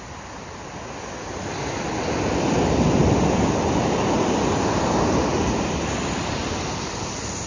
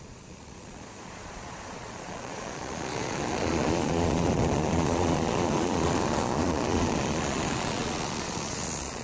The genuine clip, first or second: first